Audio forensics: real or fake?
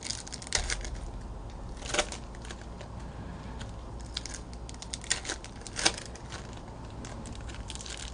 real